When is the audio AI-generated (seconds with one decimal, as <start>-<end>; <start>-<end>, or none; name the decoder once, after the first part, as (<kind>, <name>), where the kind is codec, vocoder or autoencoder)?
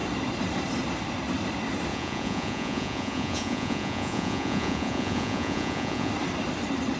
1.9-6.1 (vocoder, Vocos)